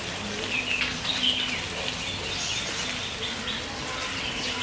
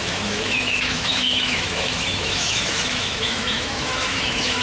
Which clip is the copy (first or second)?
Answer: second